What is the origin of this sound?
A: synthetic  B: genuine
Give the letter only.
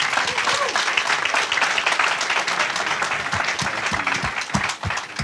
B